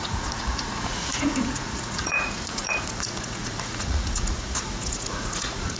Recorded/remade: remade